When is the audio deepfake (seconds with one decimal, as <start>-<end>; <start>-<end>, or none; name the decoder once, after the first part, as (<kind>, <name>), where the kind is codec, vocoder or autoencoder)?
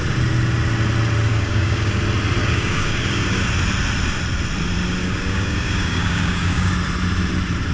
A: 1.3-2.0 (codec, DAC); 2.4-3.4; 5.0-6.7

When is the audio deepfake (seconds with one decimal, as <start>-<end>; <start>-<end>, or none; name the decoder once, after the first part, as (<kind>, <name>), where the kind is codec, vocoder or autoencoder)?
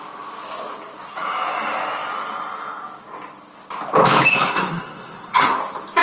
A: 4.3-5.6 (codec, SNAC)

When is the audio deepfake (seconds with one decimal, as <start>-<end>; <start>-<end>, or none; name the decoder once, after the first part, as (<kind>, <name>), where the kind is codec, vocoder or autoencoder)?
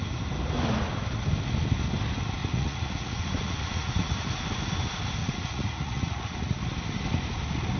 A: 2.4-4.3 (vocoder, Vocos); 5.2-6.6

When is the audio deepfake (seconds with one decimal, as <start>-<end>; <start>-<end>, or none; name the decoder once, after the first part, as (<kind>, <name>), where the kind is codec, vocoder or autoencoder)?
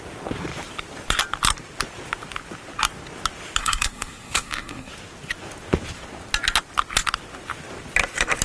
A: 3.6-4.9 (codec, SNAC)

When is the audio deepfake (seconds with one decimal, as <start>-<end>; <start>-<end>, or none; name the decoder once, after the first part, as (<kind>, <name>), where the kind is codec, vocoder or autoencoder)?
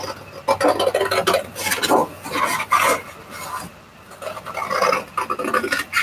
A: none